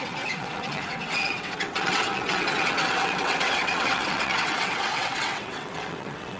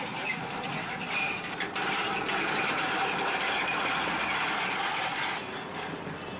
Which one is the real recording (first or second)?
second